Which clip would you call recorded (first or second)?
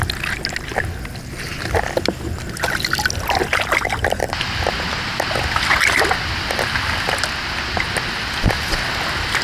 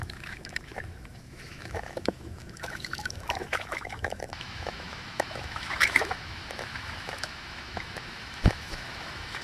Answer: first